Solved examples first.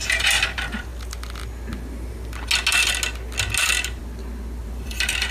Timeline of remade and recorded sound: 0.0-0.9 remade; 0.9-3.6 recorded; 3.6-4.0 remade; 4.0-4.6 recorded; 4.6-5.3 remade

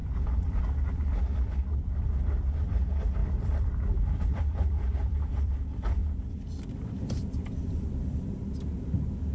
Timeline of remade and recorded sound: 0.0-0.6 remade; 0.6-3.2 recorded; 3.2-5.5 remade; 5.5-9.3 recorded